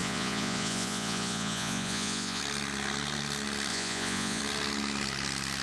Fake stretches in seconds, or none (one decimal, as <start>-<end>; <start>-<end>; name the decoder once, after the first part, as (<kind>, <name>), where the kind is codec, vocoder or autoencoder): 0.0-2.4 (vocoder, Vocos); 3.7-4.4